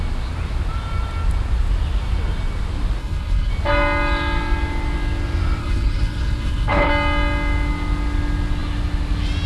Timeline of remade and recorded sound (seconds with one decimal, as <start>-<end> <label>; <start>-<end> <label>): 0.0-3.0 recorded; 3.0-3.5 remade; 3.5-5.6 recorded; 5.6-6.9 remade; 6.9-9.5 recorded